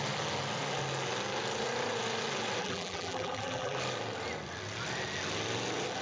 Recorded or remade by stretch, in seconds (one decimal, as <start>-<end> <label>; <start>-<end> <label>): 0.0-2.6 recorded; 2.6-3.8 remade; 3.8-6.0 recorded